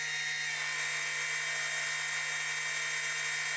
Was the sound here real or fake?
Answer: real